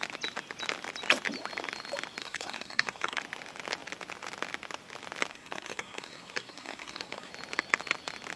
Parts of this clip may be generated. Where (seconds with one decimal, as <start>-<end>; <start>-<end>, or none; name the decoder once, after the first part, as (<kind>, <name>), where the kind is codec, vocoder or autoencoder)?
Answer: 2.2-3.2 (codec, SNAC); 5.3-7.3